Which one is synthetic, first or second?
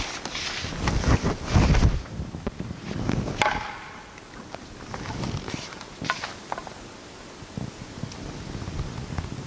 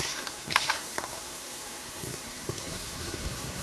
second